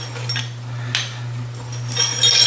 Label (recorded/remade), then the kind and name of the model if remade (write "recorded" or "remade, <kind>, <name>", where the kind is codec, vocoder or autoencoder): recorded